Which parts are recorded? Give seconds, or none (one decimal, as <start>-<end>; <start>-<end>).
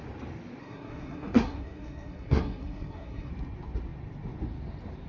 0.0-0.6; 3.3-5.1